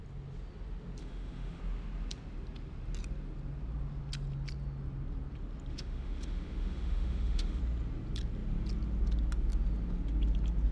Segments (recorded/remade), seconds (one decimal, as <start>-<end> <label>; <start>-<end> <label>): 0.0-1.0 recorded; 1.0-1.6 remade; 1.6-5.7 recorded; 5.7-7.6 remade; 7.6-10.7 recorded